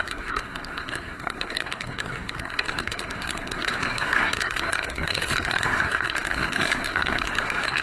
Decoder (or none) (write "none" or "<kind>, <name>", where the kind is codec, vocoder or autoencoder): codec, SNAC